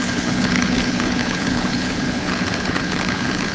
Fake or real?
fake